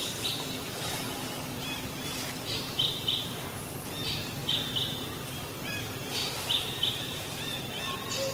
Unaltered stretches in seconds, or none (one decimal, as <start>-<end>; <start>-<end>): 3.5-6.2; 7.8-8.3